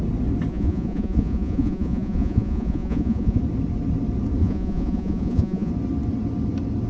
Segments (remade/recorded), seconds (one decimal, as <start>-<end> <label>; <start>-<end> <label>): 0.0-0.5 recorded; 0.5-3.4 remade; 3.4-4.4 recorded; 4.4-5.7 remade; 5.7-6.9 recorded

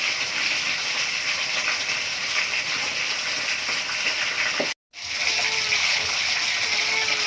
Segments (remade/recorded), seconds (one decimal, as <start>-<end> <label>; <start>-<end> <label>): 0.0-5.8 recorded; 5.8-6.3 remade; 6.3-7.3 recorded

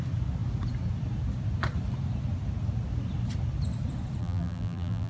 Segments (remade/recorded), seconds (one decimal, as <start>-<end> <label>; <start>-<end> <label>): 0.0-4.2 recorded; 4.2-5.1 remade

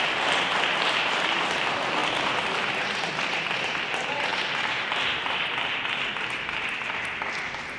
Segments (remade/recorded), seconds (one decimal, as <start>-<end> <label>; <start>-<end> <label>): 0.0-7.8 recorded

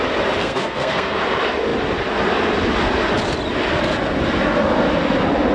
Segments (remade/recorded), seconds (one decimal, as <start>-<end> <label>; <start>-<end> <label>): 0.0-0.4 recorded; 0.4-1.2 remade; 1.2-5.5 recorded

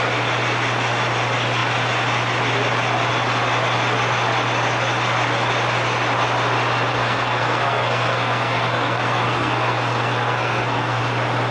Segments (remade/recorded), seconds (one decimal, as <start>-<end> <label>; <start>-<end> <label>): 0.0-6.9 recorded; 6.9-11.0 remade; 11.0-11.5 recorded

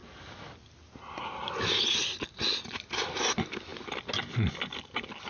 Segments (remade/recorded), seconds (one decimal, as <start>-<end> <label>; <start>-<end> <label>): 0.0-5.3 recorded